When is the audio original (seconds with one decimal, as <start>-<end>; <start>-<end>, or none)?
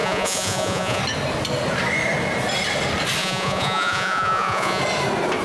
1.0-3.2; 4.8-5.4